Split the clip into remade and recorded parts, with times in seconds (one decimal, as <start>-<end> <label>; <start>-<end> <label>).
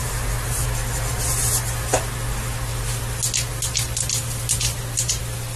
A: 0.0-5.6 recorded